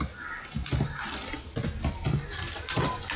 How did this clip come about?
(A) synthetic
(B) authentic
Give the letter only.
B